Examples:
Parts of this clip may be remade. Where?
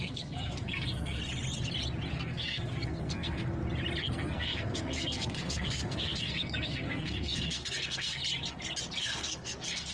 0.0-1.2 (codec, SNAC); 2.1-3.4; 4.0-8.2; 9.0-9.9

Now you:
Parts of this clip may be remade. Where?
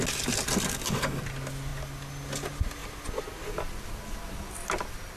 0.7-1.2 (codec, DAC)